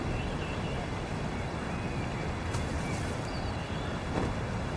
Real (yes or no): yes